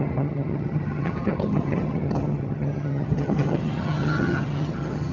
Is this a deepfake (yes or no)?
yes